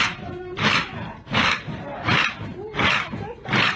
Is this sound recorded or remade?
recorded